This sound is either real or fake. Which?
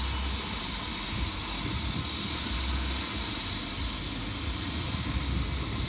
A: real